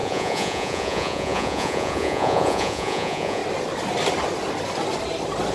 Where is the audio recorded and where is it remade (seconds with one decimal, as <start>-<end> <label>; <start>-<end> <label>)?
0.0-3.4 remade; 3.4-5.5 recorded